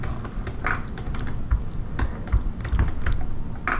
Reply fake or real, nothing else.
real